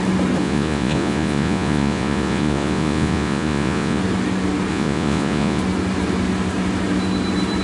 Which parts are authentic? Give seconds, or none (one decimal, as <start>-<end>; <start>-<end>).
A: 0.0-0.4; 4.0-4.7; 5.6-7.6